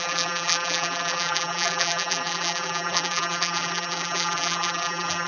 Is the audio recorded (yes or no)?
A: no